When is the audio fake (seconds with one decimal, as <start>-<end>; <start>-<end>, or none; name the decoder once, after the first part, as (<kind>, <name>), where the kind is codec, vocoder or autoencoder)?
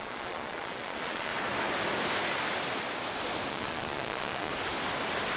0.0-1.3 (vocoder, Vocos); 3.5-4.5